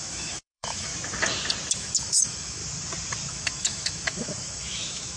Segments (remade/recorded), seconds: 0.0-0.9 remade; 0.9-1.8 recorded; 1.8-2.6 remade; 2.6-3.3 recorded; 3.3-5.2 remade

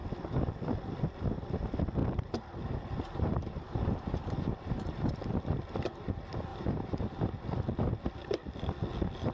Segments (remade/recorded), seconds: 0.0-2.0 recorded; 2.0-5.1 remade; 5.1-6.5 recorded; 6.5-7.4 remade; 7.4-9.3 recorded